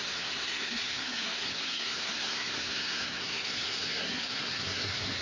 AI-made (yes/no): yes